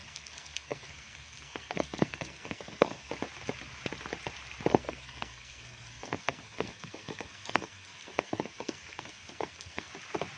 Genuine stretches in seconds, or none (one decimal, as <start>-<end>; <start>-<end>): 3.1-4.7; 9.9-10.4